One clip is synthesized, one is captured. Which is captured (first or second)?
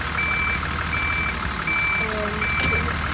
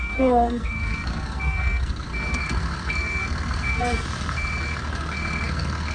first